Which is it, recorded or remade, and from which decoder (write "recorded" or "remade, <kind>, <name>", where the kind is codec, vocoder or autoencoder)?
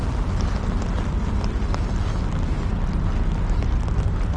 recorded